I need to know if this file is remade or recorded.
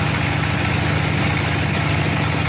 recorded